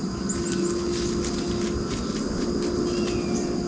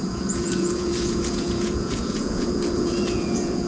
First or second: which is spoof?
second